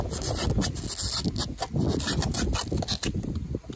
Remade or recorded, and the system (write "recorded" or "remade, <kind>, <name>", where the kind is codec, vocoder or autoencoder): recorded